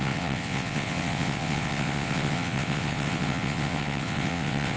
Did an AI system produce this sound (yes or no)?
yes